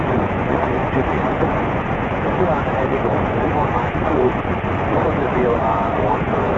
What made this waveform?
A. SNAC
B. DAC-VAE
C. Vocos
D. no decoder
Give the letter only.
C